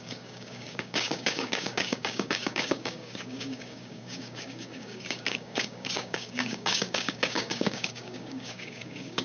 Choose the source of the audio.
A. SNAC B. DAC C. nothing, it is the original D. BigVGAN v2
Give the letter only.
B